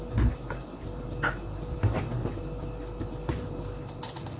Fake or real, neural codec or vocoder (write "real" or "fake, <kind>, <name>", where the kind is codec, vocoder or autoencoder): real